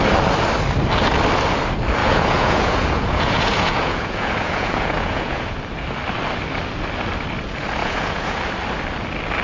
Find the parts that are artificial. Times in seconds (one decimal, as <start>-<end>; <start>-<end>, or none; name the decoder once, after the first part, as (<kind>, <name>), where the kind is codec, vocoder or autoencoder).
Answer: 2.0-5.6 (vocoder, Vocos); 7.8-8.4